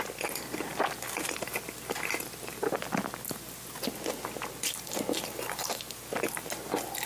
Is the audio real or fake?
real